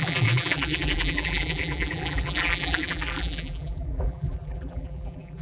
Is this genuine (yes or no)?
no